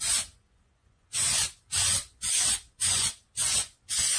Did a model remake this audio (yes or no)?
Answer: yes